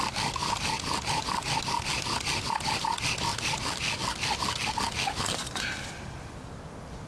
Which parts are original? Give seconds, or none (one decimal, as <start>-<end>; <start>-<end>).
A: 0.0-7.1